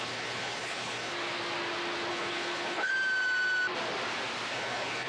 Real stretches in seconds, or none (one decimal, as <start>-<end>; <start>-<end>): 1.1-2.1; 2.9-4.5